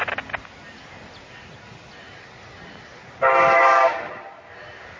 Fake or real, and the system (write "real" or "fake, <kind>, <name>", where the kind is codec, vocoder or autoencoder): real